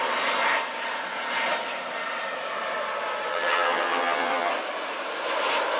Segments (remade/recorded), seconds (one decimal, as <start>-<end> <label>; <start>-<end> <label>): 0.0-3.3 recorded; 3.3-4.5 remade; 4.5-5.8 recorded